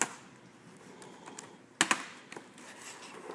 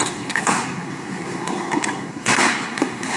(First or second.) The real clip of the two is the first